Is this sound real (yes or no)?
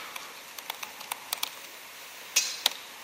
yes